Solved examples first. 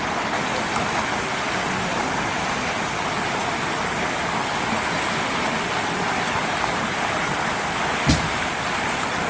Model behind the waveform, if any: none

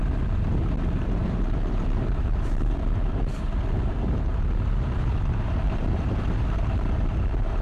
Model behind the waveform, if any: vocoder, BigVGAN v2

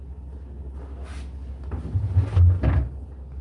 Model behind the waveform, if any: none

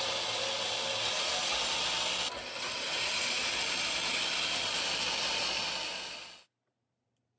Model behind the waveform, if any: none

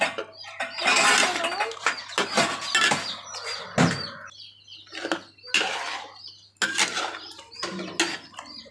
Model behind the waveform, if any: none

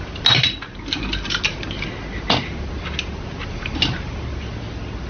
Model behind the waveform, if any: none